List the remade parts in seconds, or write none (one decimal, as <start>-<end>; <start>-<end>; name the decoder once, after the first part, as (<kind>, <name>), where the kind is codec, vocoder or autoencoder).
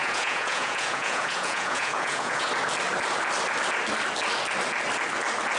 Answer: 0.0-2.5 (vocoder, Vocos)